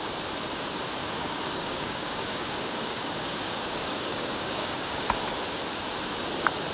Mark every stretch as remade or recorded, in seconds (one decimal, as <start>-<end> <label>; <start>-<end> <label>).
0.0-1.0 recorded; 1.0-5.0 remade; 5.0-6.7 recorded